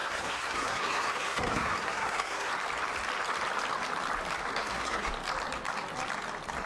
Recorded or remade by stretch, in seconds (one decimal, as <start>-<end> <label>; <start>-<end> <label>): 0.0-2.5 remade; 2.5-4.5 recorded; 4.5-5.1 remade; 5.1-6.7 recorded